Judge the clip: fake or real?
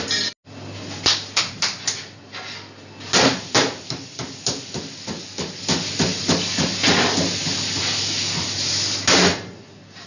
real